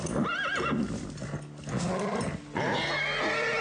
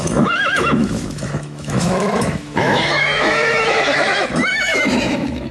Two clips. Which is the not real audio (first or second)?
second